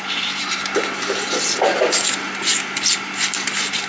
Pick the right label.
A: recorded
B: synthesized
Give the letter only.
A